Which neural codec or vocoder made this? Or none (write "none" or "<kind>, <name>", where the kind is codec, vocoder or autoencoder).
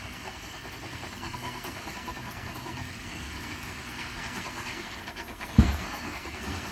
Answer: codec, SNAC